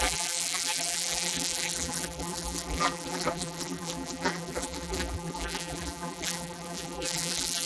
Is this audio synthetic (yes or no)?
yes